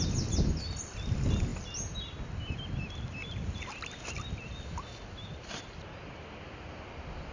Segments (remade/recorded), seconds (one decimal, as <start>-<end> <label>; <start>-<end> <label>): 0.0-7.3 recorded